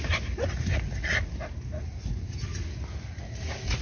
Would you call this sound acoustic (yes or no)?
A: yes